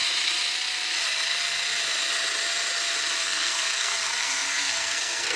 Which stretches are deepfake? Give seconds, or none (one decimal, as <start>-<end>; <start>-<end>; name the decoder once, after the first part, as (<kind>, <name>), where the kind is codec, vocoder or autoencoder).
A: 3.2-5.4 (codec, SNAC)